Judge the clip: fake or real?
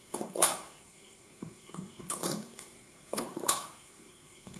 fake